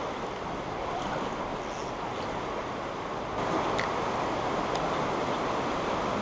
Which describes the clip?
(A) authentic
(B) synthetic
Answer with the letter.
A